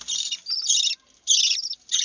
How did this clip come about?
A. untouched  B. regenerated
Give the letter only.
A